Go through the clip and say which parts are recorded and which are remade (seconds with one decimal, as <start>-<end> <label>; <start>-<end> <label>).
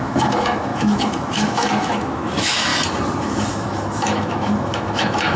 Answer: 0.0-2.7 remade; 2.7-3.2 recorded; 3.2-5.4 remade